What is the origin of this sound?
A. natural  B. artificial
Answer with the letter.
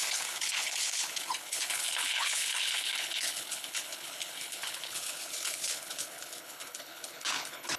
B